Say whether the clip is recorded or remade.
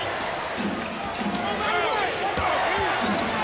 recorded